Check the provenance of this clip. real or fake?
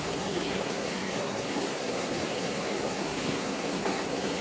fake